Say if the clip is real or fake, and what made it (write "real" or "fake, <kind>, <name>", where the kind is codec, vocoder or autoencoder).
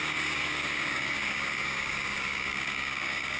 fake, codec, DAC